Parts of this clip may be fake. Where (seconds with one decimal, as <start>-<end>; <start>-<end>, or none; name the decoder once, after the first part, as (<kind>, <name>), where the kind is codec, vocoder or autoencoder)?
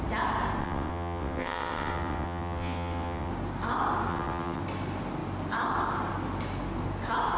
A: 0.6-3.3 (vocoder, WaveNeXt); 4.1-4.6